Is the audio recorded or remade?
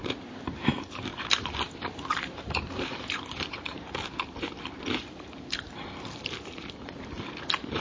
remade